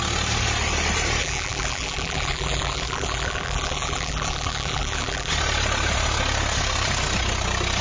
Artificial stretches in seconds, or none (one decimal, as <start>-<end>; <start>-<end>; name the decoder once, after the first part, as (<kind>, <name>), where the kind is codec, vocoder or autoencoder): 1.2-5.3 (vocoder, BigVGAN v2)